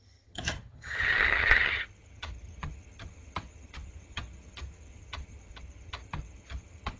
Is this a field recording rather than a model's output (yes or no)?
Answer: no